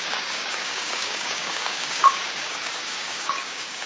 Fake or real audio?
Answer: fake